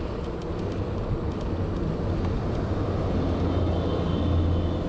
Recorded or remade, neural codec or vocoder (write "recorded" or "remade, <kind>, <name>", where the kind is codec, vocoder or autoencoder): recorded